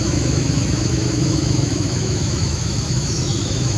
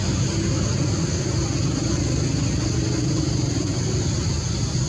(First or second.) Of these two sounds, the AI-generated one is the first